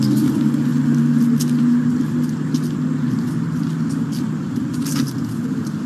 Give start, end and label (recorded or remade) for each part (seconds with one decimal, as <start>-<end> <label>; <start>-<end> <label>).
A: 0.0-5.9 recorded